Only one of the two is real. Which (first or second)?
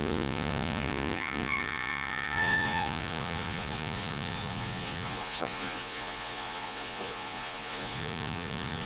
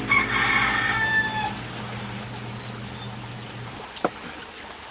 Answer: second